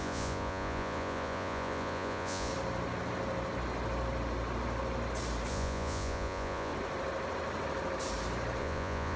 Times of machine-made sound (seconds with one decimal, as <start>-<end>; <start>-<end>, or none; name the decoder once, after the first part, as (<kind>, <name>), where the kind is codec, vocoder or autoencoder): 0.0-2.5 (vocoder, Vocos); 5.5-6.7; 8.6-9.2